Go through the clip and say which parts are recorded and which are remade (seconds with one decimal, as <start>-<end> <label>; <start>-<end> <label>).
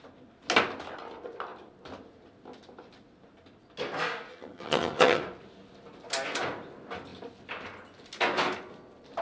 0.0-4.3 recorded; 4.3-5.2 remade; 5.2-9.2 recorded